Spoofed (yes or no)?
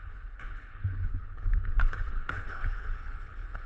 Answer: yes